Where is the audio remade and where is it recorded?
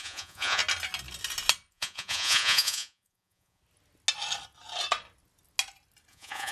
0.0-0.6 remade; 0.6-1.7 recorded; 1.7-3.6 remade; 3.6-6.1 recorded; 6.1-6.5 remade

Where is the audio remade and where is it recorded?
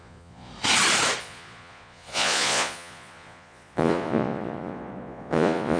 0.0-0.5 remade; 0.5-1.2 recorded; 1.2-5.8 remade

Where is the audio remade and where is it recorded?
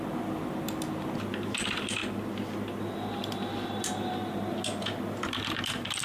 0.0-6.0 recorded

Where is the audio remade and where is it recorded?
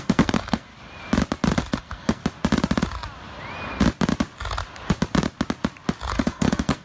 0.0-0.7 remade; 0.7-1.8 recorded; 1.8-2.2 remade; 2.2-6.1 recorded; 6.1-6.8 remade